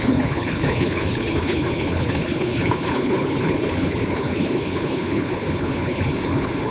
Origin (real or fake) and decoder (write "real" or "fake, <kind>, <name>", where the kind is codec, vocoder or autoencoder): fake, codec, HILCodec